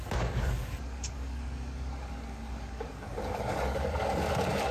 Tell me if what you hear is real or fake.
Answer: fake